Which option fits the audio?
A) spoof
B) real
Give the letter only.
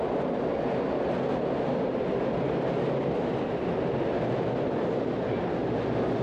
B